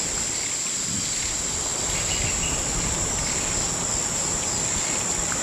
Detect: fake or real real